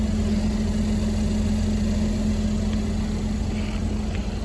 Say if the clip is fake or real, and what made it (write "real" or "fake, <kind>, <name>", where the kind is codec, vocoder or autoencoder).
real